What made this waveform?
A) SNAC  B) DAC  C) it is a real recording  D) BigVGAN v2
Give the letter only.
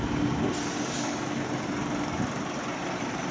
C